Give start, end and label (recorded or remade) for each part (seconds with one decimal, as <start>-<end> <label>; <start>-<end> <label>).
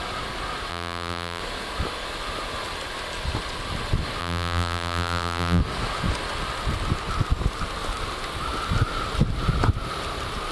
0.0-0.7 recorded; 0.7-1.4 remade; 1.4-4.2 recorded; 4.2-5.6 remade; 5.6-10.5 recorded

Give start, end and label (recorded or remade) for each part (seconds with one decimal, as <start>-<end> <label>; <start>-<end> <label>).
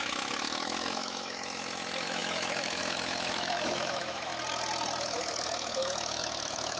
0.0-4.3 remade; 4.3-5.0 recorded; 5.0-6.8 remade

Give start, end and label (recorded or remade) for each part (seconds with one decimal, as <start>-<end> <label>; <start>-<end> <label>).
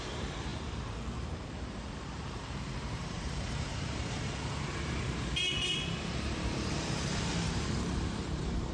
0.0-8.7 remade